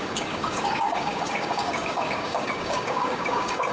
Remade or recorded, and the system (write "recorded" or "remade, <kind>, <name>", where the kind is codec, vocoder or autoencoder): remade, codec, DAC